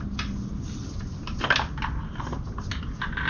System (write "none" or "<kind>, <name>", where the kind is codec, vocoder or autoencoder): none